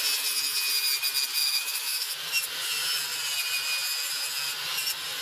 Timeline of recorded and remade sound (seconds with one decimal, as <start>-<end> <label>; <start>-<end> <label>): 0.0-1.4 recorded; 1.4-2.1 remade; 2.1-5.2 recorded